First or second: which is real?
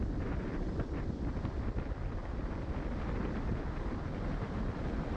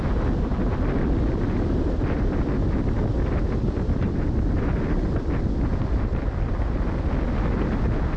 second